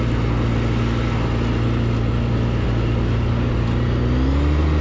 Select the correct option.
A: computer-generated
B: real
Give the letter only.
B